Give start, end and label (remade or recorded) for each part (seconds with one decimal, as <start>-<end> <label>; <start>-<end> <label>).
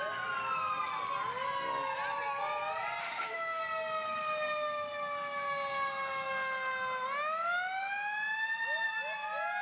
0.0-3.0 recorded; 3.0-3.6 remade; 3.6-9.6 recorded